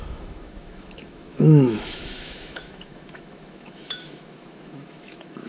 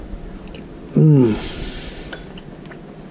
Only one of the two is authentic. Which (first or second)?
second